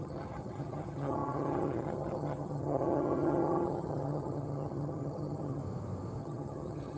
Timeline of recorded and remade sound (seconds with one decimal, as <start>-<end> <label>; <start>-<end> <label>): 0.0-5.6 remade; 5.6-6.2 recorded; 6.2-7.0 remade

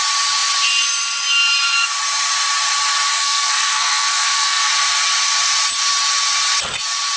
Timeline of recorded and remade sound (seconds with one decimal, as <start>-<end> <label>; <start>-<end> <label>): 0.0-3.2 recorded; 3.2-4.7 remade; 4.7-7.2 recorded

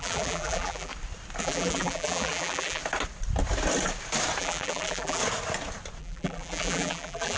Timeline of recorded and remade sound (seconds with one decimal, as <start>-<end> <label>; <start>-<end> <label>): 0.0-0.9 remade; 0.9-1.4 recorded; 1.4-2.8 remade; 2.8-4.4 recorded; 4.4-5.2 remade; 5.2-6.0 recorded; 6.0-7.4 remade

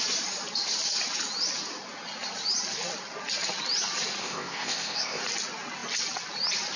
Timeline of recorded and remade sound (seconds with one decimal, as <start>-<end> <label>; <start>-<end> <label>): 0.0-4.2 recorded; 4.2-5.2 remade; 5.2-6.8 recorded

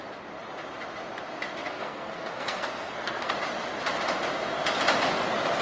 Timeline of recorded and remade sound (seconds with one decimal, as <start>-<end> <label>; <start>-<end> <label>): 0.0-1.6 recorded; 1.6-3.3 remade; 3.3-5.6 recorded

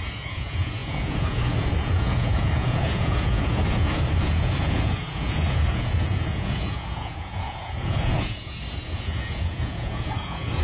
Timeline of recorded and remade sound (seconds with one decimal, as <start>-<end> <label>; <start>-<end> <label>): 0.0-10.6 remade

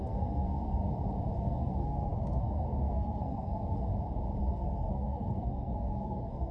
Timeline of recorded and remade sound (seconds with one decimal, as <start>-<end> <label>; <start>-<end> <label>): 0.0-0.8 remade; 0.8-1.4 recorded; 1.4-3.9 remade; 3.9-4.4 recorded; 4.4-6.5 remade